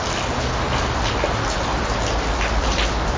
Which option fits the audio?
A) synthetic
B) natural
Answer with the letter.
B